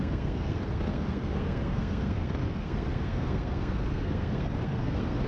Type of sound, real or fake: fake